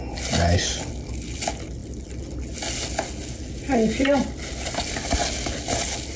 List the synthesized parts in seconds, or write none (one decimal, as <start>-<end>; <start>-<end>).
none